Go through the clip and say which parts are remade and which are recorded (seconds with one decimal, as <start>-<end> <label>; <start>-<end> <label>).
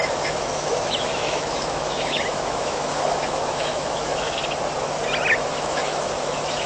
0.0-4.4 remade; 4.4-5.3 recorded; 5.3-6.7 remade